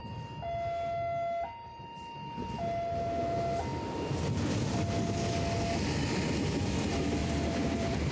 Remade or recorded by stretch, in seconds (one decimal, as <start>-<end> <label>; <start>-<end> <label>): 0.0-7.2 recorded; 7.2-8.1 remade